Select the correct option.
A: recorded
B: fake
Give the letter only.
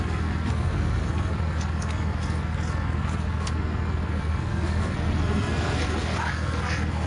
B